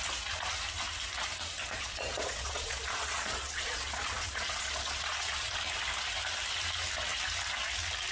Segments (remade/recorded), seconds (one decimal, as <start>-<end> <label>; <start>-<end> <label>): 0.0-1.6 recorded; 1.6-5.6 remade; 5.6-8.1 recorded